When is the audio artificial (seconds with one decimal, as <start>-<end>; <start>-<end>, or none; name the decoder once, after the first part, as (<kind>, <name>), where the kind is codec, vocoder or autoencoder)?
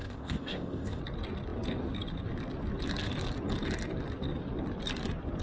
0.0-1.0 (codec, ZipCodec)